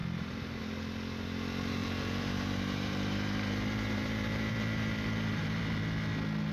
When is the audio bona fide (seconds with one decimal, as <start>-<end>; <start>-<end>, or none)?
0.6-1.8; 5.6-6.5